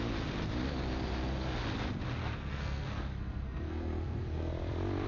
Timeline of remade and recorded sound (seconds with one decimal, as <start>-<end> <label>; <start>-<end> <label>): 0.0-2.2 recorded; 2.2-4.5 remade; 4.5-5.1 recorded